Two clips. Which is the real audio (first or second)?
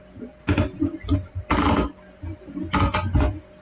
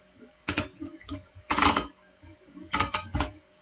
first